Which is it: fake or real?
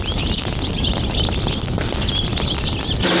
real